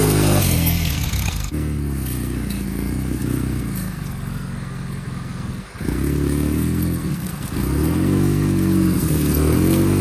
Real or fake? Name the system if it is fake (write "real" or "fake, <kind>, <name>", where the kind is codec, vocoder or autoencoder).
fake, codec, SNAC